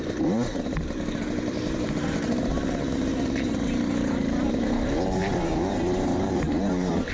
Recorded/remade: remade